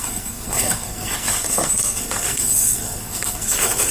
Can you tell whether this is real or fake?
fake